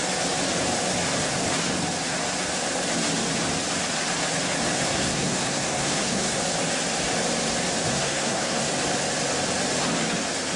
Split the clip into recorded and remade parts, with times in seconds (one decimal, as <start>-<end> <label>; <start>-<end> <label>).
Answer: 0.0-4.8 recorded; 4.8-6.4 remade; 6.4-7.9 recorded; 7.9-8.7 remade; 8.7-10.6 recorded